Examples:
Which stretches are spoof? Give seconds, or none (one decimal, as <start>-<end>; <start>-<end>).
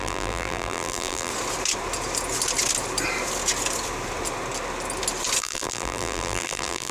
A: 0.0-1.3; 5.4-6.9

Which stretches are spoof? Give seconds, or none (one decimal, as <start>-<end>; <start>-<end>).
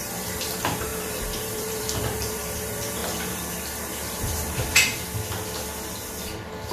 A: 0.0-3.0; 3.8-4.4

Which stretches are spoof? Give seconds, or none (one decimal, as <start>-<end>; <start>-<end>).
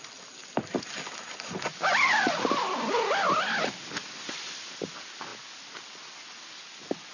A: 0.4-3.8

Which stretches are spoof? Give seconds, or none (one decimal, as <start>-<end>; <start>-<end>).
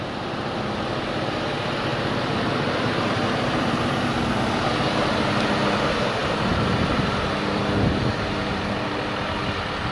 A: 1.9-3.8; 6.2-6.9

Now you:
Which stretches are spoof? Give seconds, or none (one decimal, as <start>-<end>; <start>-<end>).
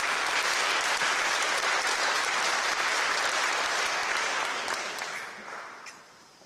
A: 0.0-4.0; 4.8-6.5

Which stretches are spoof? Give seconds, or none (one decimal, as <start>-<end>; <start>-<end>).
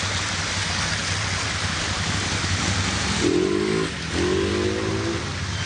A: 1.0-3.1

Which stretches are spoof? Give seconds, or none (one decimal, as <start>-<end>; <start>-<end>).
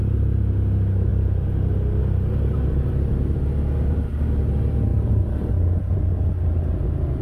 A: 4.9-5.5